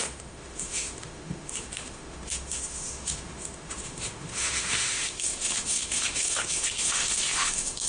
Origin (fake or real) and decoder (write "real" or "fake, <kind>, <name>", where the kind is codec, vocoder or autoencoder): fake, autoencoder, DAC-VAE